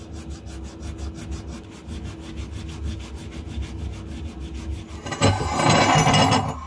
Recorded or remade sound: recorded